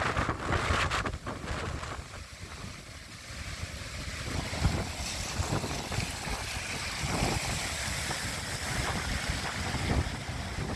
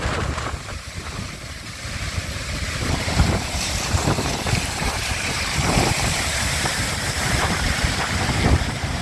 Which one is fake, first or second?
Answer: second